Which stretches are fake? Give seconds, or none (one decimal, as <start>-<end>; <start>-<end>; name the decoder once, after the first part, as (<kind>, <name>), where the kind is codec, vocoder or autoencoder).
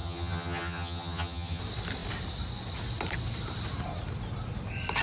0.0-1.6 (vocoder, HiFi-GAN)